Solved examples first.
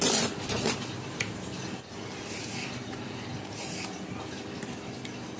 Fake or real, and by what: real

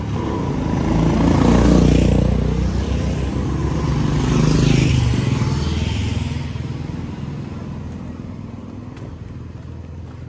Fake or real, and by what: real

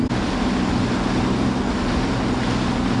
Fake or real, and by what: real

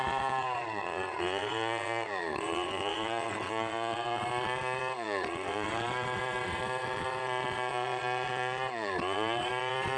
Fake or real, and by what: fake, vocoder, Vocos